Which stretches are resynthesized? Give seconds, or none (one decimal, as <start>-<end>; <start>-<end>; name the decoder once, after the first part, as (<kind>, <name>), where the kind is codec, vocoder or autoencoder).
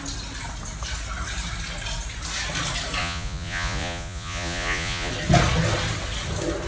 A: 3.0-5.1 (vocoder, Vocos)